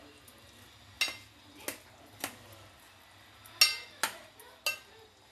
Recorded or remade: recorded